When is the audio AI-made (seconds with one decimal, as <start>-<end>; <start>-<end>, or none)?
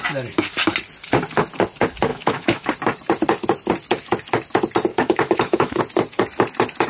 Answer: 2.1-2.7; 4.9-5.8